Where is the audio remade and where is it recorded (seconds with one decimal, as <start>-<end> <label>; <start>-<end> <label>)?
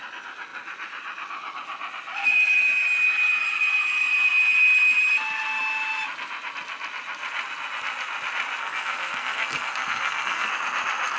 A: 0.0-8.6 recorded; 8.6-10.5 remade; 10.5-11.2 recorded